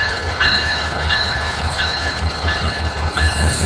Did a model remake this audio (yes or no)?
yes